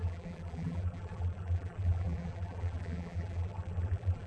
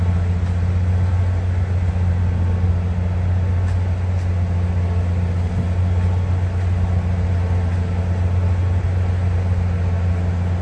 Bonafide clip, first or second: second